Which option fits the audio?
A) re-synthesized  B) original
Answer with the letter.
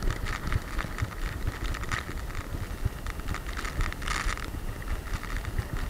B